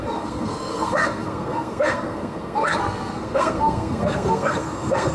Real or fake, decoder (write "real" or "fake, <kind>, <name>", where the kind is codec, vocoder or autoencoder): fake, codec, SNAC